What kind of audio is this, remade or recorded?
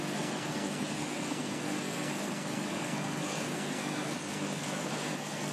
remade